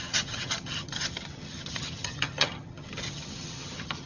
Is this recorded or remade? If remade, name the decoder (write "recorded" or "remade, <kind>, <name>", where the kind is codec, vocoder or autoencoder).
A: remade, vocoder, HiFi-GAN